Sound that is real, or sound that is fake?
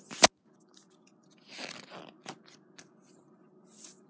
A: real